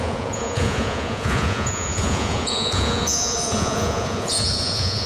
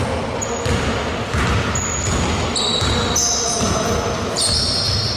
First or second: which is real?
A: second